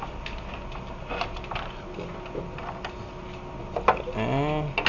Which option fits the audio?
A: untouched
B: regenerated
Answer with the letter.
A